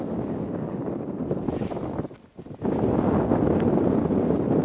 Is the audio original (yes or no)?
yes